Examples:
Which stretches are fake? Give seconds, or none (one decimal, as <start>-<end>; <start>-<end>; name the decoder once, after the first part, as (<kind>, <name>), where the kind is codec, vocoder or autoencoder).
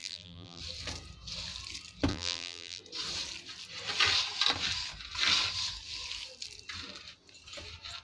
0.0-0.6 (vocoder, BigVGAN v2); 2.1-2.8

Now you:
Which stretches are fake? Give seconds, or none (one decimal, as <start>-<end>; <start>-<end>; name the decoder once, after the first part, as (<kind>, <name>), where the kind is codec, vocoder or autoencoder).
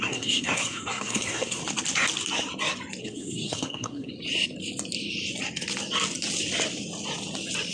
0.0-1.6 (codec, SNAC); 3.0-4.1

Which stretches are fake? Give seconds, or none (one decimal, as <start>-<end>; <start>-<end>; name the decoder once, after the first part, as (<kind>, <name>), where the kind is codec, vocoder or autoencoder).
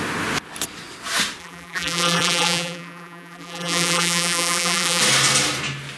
1.4-5.0 (vocoder, BigVGAN v2)